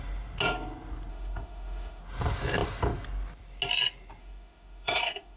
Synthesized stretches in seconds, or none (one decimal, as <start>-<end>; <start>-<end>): 1.1-2.0; 4.2-5.4